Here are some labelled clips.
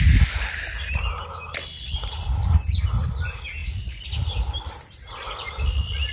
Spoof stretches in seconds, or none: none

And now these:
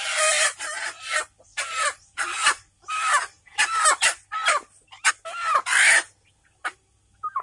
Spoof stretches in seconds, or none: none

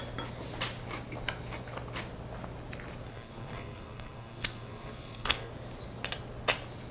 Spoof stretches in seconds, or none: 3.1-5.5 (codec, SNAC)

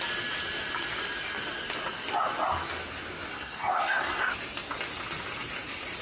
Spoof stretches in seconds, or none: 3.3-4.3 (codec, SNAC)

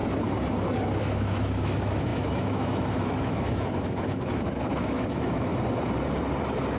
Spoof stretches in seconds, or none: 1.0-5.5 (autoencoder, DAC-VAE)

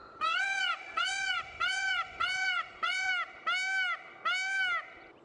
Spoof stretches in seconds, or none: 0.0-3.1 (vocoder, Vocos)

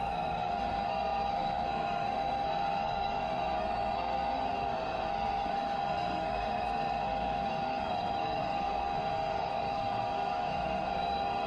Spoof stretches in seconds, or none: 0.0-11.5 (codec, SNAC)

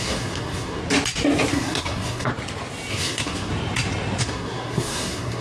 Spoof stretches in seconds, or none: 0.0-0.8 (codec, SNAC); 1.5-2.3; 2.9-3.5; 4.2-5.4